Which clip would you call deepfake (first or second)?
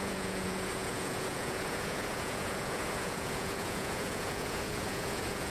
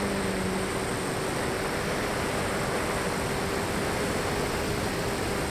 first